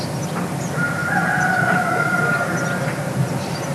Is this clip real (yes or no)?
yes